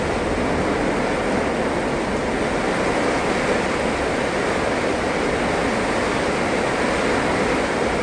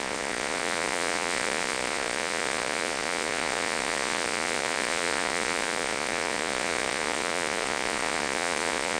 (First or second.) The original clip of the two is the first